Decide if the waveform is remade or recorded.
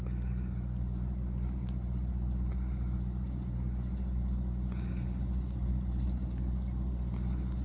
recorded